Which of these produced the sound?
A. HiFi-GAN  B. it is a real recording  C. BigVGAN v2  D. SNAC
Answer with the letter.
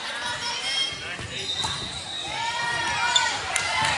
C